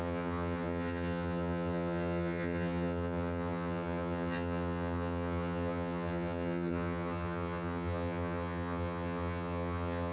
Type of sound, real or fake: fake